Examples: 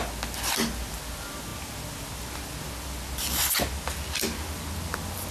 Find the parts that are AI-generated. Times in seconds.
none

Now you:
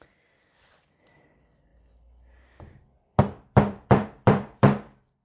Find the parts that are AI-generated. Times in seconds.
0.0-1.7 (vocoder, BigVGAN v2); 3.2-5.2

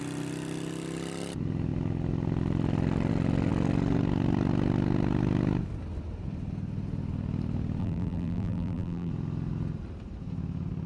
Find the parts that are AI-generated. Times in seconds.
7.8-9.1 (vocoder, BigVGAN v2)

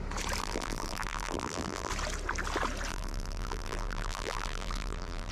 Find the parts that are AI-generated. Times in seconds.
0.4-1.9 (vocoder, BigVGAN v2); 2.9-5.3

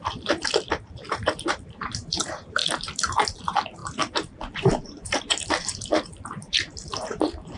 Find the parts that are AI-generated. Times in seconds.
0.0-7.6 (vocoder, BigVGAN v2)

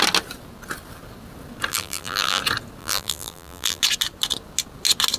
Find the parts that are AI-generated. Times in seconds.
1.7-2.4 (vocoder, BigVGAN v2); 2.8-3.8

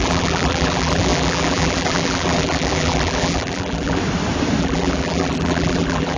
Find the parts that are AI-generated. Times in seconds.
0.0-4.0 (vocoder, BigVGAN v2); 4.6-6.2

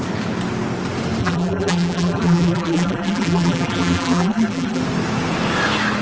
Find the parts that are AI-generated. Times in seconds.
1.2-4.8 (vocoder, BigVGAN v2)